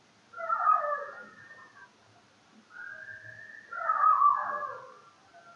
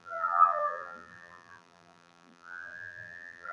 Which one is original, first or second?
first